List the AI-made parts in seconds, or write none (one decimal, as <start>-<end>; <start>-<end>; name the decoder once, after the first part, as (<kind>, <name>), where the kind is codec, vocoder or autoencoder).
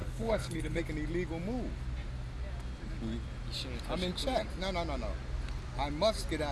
0.0-0.8 (codec, HILCodec)